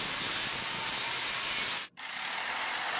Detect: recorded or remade recorded